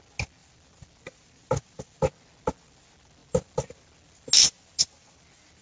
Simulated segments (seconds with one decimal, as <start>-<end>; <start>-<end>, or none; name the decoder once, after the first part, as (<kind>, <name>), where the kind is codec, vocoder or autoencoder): none